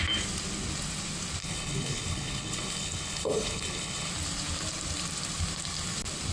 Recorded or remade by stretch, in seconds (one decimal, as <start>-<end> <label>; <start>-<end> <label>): 0.0-1.4 recorded; 1.4-4.1 remade; 4.1-6.3 recorded